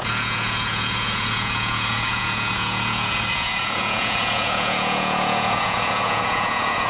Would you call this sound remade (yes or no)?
yes